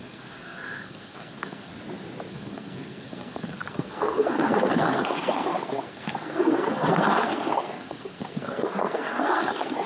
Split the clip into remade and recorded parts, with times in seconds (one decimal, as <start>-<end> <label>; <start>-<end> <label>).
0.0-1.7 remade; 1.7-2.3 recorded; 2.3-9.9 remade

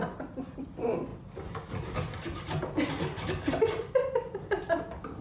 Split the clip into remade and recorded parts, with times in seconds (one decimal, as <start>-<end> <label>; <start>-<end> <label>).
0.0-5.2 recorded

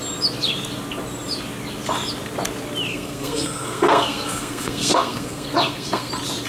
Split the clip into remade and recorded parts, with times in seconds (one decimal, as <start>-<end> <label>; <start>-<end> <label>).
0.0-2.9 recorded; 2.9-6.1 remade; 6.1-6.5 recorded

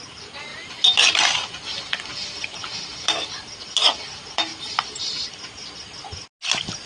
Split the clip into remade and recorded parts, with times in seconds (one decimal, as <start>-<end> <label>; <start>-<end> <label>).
0.0-6.9 recorded

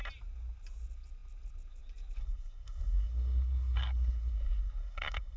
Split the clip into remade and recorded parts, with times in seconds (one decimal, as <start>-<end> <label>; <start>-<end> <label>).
0.0-2.2 recorded; 2.2-5.4 remade

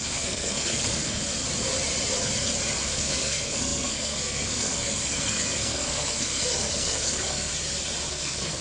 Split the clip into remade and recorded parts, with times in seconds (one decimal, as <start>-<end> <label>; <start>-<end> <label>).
0.0-1.2 remade; 1.2-2.8 recorded; 2.8-7.5 remade; 7.5-8.1 recorded; 8.1-8.6 remade